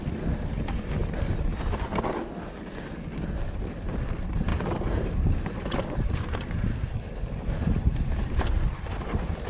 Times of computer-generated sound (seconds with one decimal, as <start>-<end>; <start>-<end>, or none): 4.5-9.5